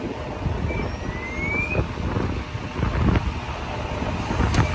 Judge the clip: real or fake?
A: real